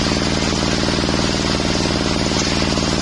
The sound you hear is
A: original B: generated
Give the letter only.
A